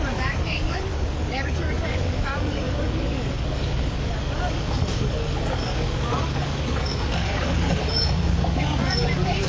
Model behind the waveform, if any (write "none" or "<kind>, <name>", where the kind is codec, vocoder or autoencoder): codec, DAC